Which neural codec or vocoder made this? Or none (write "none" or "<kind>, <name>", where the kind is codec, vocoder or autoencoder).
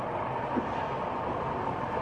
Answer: none